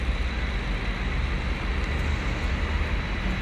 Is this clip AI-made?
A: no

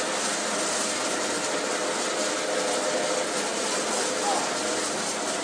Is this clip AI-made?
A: yes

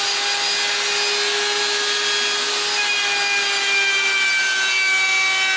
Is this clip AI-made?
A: no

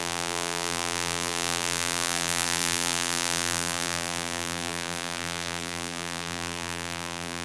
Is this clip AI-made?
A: yes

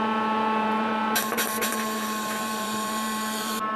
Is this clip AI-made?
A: yes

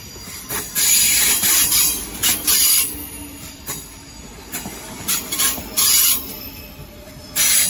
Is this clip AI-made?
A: yes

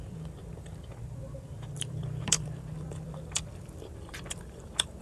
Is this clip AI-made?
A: yes